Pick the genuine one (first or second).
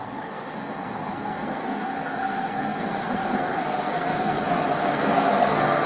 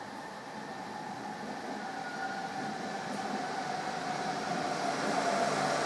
second